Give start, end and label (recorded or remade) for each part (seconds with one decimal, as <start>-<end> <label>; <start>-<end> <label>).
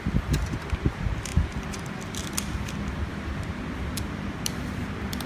0.0-5.3 recorded